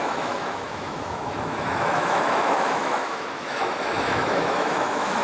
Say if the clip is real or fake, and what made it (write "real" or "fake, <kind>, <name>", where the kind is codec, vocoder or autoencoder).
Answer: fake, autoencoder, DAC-VAE